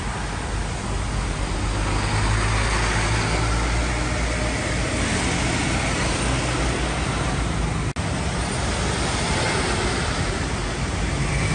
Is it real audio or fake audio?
real